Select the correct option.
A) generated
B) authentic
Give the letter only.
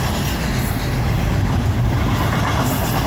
B